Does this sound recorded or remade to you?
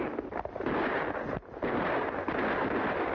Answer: recorded